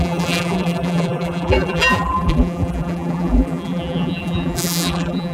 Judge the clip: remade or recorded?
remade